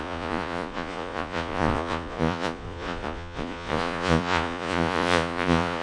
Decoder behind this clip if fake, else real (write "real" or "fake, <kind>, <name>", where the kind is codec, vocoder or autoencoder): fake, vocoder, Vocos